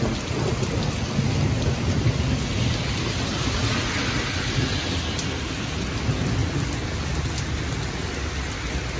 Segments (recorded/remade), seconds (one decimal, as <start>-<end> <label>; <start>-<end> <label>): 0.0-9.0 recorded